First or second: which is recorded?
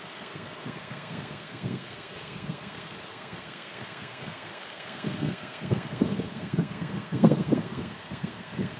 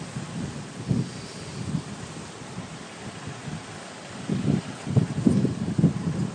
second